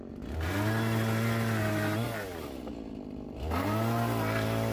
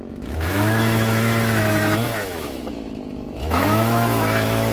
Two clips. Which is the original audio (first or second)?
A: first